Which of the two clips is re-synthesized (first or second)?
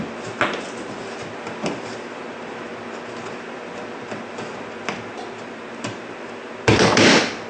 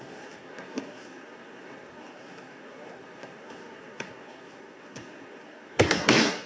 second